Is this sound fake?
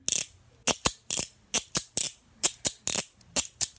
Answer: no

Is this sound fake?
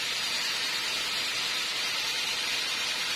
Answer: no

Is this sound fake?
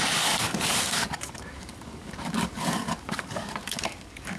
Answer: yes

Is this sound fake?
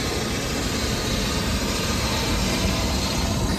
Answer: no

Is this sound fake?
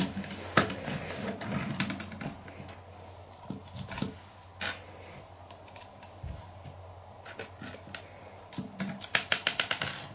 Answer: no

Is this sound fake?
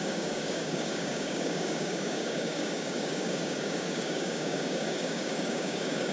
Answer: yes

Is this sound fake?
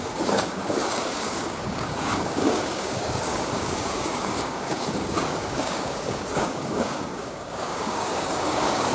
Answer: yes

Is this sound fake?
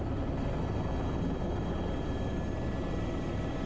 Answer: no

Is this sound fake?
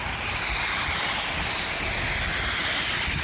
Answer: no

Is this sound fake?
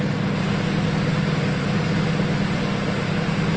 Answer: no